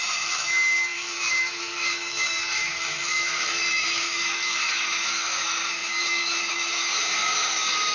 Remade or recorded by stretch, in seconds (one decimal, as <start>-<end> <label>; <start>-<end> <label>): 0.0-7.9 remade